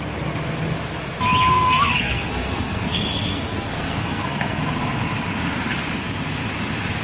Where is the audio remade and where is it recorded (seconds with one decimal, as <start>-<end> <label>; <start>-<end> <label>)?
0.0-1.5 recorded; 1.5-4.6 remade; 4.6-7.0 recorded

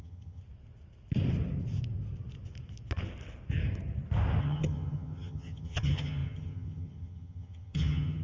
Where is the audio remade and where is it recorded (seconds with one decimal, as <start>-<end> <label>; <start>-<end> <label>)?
0.0-0.4 remade; 0.4-4.4 recorded; 4.4-8.2 remade